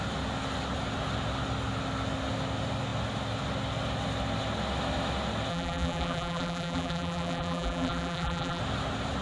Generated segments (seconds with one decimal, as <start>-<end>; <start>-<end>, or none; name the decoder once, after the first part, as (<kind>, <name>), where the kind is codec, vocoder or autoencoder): 5.5-8.6 (vocoder, BigVGAN v2)